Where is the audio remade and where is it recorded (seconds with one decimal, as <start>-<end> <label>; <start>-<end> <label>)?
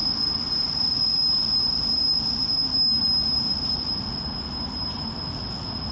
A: 0.0-5.9 recorded